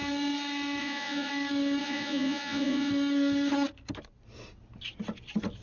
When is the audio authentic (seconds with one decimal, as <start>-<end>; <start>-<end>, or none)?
0.0-0.8; 1.3-1.8; 2.9-5.6